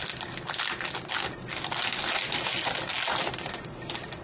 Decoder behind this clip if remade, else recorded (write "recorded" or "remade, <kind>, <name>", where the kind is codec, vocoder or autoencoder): recorded